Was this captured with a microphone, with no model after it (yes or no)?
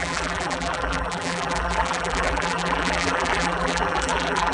no